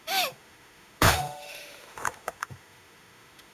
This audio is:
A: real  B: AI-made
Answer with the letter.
B